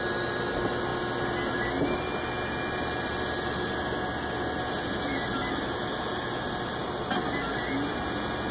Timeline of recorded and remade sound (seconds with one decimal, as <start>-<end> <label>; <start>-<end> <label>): 0.0-8.5 recorded